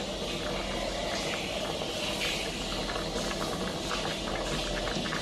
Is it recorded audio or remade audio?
recorded